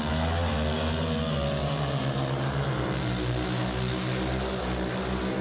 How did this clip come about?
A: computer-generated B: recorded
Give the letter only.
B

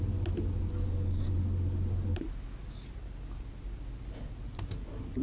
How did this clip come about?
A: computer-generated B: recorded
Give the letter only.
B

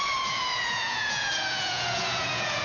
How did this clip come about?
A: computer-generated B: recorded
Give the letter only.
A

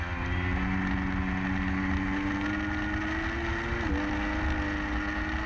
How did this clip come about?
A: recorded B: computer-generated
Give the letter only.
A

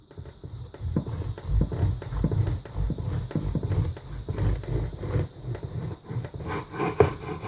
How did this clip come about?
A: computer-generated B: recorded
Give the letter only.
B